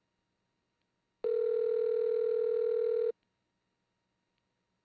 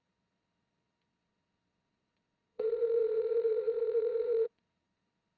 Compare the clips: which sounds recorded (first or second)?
first